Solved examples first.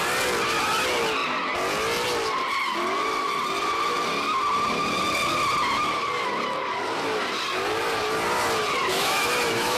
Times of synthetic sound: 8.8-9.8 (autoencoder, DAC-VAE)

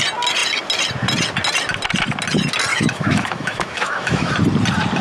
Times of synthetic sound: 2.7-4.3 (autoencoder, DAC-VAE)

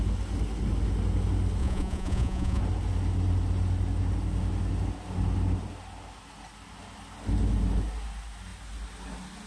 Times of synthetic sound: 1.6-2.6 (vocoder, Vocos)

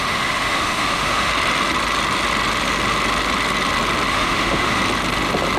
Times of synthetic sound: 0.0-1.3 (autoencoder, DAC-VAE); 4.1-4.8

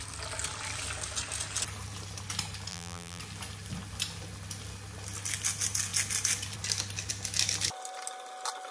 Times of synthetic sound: 2.7-3.2 (vocoder, BigVGAN v2)

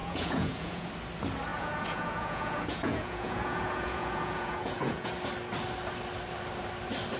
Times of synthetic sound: 0.0-0.9 (vocoder, Vocos); 1.5-5.1

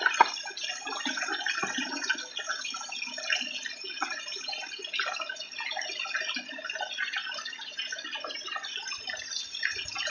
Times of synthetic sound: none